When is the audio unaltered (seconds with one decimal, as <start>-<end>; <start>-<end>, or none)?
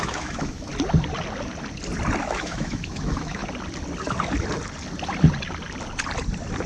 0.7-2.2; 3.4-6.7